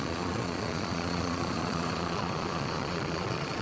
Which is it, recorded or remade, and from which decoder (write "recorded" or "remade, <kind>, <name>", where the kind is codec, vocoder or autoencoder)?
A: remade, vocoder, Vocos